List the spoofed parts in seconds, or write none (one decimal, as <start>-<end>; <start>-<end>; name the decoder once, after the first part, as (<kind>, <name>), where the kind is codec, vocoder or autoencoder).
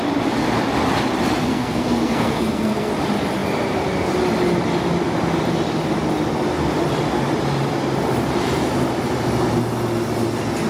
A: 1.5-2.9 (codec, SNAC)